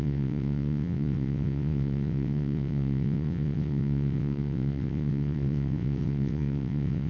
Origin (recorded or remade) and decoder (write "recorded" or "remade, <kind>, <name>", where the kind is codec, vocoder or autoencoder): remade, vocoder, WaveNeXt